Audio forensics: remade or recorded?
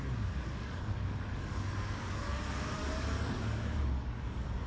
remade